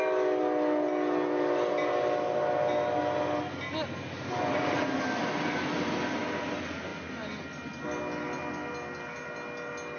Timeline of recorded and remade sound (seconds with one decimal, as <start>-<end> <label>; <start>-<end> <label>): 0.0-10.0 recorded